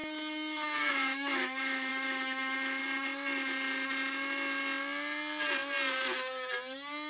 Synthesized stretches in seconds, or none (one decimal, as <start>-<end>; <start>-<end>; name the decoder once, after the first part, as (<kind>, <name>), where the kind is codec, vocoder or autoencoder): 0.9-2.8 (autoencoder, DAC-VAE)